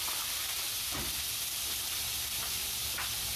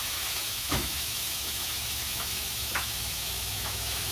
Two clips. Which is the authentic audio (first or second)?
first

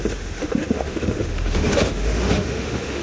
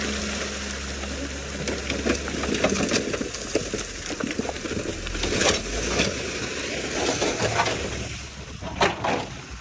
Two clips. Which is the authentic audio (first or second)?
second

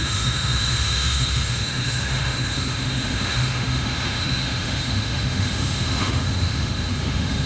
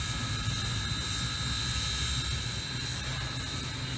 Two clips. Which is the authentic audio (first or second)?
second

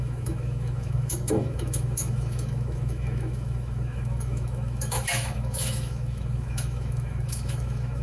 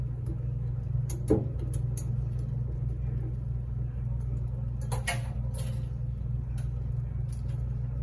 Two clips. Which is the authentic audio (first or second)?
second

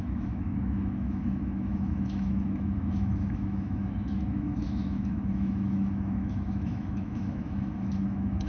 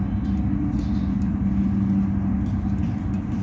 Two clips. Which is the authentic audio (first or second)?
second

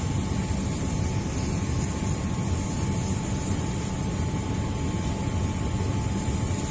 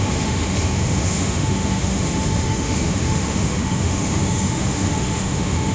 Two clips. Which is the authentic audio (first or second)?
first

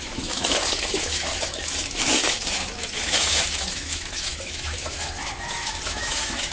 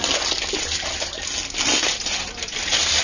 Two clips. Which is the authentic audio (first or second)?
second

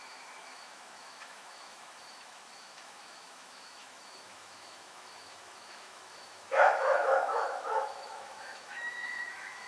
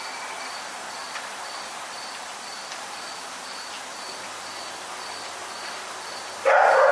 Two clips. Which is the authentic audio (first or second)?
second